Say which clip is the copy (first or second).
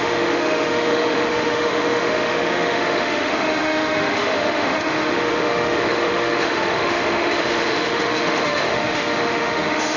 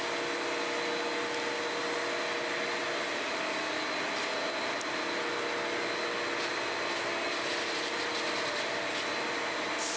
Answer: first